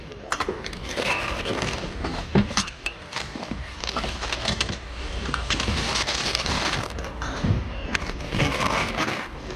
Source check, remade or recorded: remade